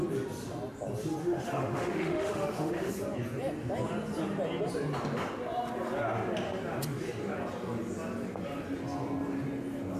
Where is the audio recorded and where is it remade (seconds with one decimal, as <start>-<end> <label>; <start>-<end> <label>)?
0.0-1.2 recorded; 1.2-2.9 remade; 2.9-10.0 recorded